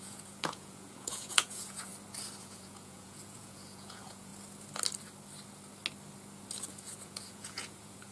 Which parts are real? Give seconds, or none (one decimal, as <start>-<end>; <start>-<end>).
1.9-2.4; 4.3-6.7